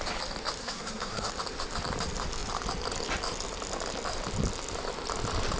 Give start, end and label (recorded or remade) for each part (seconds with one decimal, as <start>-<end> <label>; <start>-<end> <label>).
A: 0.0-0.6 recorded; 0.6-1.3 remade; 1.3-5.6 recorded